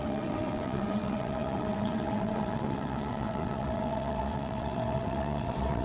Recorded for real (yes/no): no